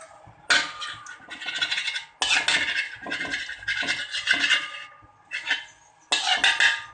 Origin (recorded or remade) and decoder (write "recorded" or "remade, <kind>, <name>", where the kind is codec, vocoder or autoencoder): recorded